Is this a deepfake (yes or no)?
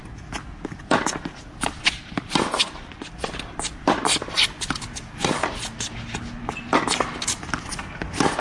no